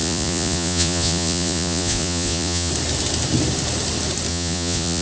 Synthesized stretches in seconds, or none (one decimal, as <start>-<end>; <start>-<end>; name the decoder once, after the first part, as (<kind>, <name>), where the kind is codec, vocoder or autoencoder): 0.0-2.7 (vocoder, Vocos); 4.3-5.0